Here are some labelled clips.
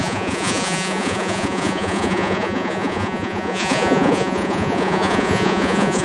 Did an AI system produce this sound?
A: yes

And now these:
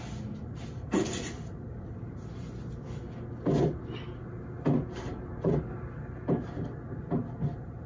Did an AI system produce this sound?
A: no